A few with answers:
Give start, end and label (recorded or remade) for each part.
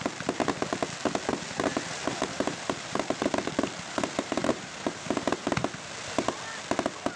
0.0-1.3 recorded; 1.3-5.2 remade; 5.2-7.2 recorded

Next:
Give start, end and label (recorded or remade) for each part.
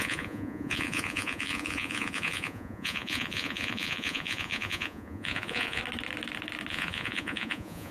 0.0-5.8 remade; 5.8-6.7 recorded; 6.7-7.9 remade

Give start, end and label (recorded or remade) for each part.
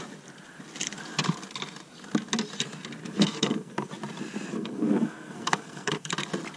0.0-3.0 recorded; 3.0-3.9 remade; 3.9-4.5 recorded; 4.5-6.1 remade; 6.1-6.6 recorded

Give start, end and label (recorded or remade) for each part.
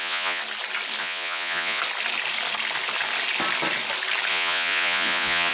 0.0-0.4 remade; 0.4-1.0 recorded; 1.0-1.8 remade; 1.8-4.3 recorded; 4.3-5.5 remade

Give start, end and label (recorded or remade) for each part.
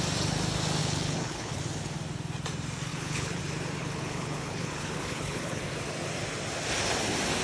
0.0-0.8 recorded; 0.8-1.6 remade; 1.6-2.9 recorded; 2.9-3.4 remade; 3.4-3.8 recorded; 3.8-5.6 remade; 5.6-7.4 recorded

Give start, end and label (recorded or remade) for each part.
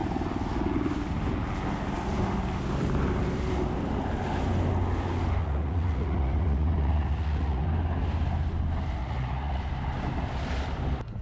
0.0-5.4 recorded; 5.4-7.7 remade; 7.7-9.0 recorded; 9.0-9.6 remade; 9.6-11.2 recorded